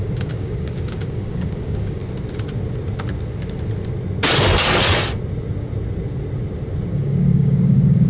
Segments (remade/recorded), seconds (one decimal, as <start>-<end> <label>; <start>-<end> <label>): 0.0-2.0 remade; 2.0-6.9 recorded; 6.9-8.1 remade